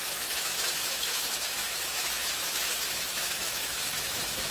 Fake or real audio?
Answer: fake